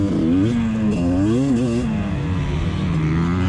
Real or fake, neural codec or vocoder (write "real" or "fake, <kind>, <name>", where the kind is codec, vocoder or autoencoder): real